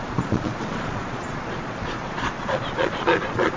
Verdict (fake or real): fake